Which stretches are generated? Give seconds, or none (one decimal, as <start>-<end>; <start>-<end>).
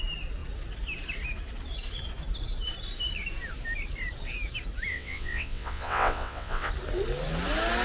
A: 4.9-6.7